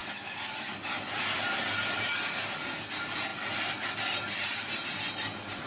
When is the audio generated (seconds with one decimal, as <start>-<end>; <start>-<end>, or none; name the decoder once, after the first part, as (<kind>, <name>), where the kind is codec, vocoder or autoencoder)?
none